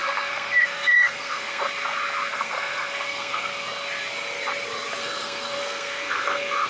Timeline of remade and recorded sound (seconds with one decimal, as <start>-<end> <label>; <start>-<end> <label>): 0.0-1.6 remade; 1.6-2.3 recorded; 2.3-3.5 remade; 3.5-5.0 recorded; 5.0-6.7 remade